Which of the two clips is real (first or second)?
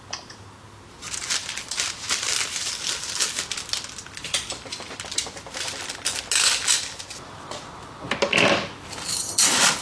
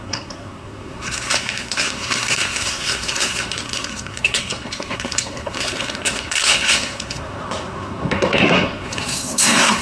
first